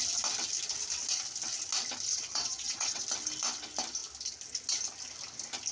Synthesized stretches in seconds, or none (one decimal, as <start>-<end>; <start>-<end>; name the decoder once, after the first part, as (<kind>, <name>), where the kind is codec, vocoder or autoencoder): 2.1-3.0 (vocoder, WaveNeXt)